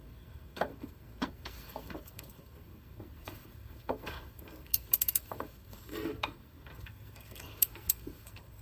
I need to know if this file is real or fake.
fake